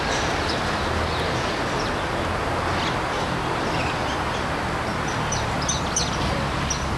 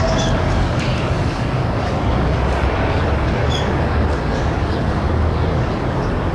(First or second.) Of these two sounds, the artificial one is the second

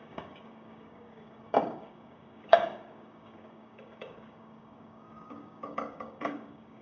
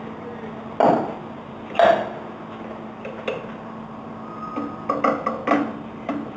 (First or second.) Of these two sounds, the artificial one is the first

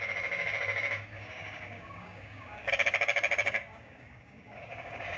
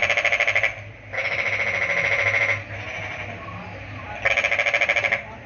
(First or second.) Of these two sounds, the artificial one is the first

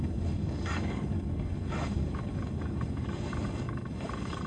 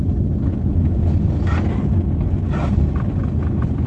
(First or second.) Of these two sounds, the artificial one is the first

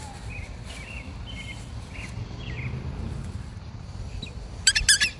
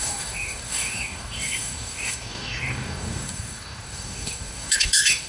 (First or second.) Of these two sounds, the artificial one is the second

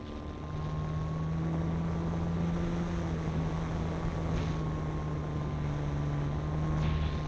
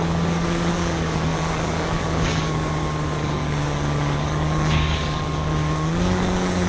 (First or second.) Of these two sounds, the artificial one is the second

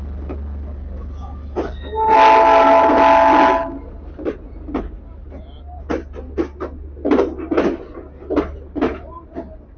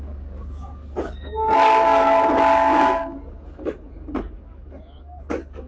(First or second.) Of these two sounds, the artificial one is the second